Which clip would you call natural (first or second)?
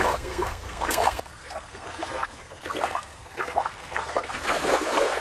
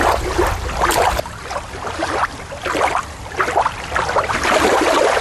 second